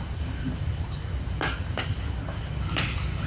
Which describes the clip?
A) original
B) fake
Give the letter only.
A